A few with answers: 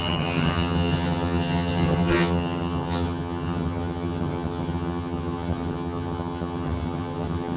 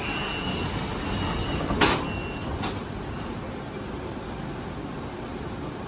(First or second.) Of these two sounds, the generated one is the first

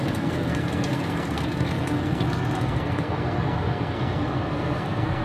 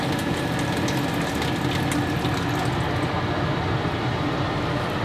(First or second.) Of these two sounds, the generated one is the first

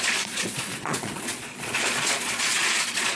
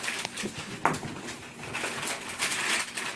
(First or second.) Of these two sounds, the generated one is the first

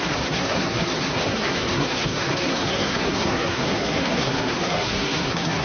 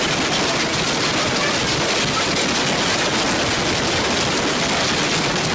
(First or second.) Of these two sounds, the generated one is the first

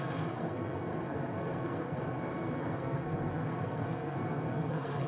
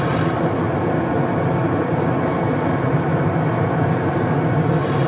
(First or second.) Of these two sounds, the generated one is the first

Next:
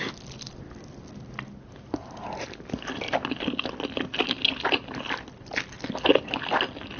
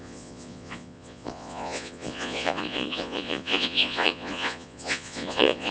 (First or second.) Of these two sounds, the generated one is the second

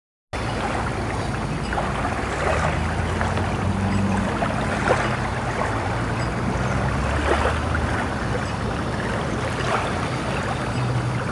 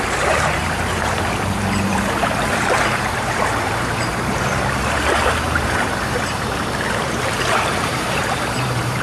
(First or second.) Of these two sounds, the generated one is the second